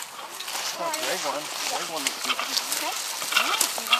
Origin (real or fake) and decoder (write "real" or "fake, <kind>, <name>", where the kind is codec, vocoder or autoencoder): real